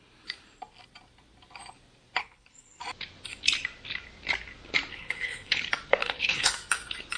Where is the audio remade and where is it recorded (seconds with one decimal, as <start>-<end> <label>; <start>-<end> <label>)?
0.0-2.2 recorded; 2.2-2.8 remade; 2.8-4.9 recorded; 4.9-5.6 remade; 5.6-6.0 recorded; 6.0-6.5 remade; 6.5-7.2 recorded